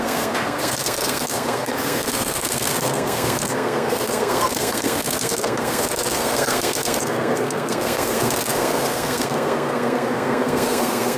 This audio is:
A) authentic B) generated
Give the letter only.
B